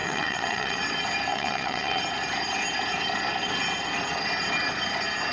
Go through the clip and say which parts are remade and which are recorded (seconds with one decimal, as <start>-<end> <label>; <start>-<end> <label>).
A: 0.0-0.8 remade; 0.8-1.3 recorded; 1.3-2.0 remade; 2.0-5.3 recorded